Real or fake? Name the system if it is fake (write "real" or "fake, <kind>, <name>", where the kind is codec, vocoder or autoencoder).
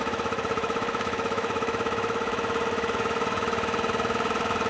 fake, autoencoder, DAC-VAE